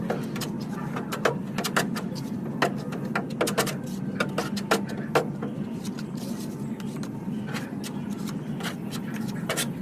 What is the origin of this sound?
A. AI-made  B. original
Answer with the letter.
B